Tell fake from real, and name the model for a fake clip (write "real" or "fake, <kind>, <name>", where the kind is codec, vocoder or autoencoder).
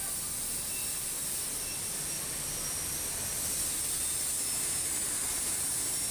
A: real